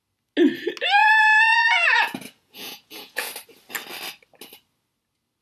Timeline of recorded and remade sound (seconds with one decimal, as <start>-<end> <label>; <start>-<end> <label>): 0.0-1.0 recorded; 1.0-3.3 remade; 3.3-5.4 recorded